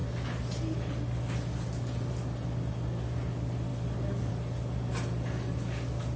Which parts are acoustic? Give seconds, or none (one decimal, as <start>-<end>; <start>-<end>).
0.0-6.2